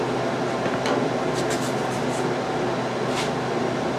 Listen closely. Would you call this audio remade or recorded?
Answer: recorded